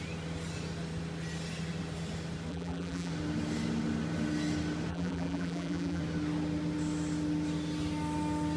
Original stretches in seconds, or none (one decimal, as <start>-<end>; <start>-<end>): 0.0-2.5; 3.1-4.9; 6.0-8.6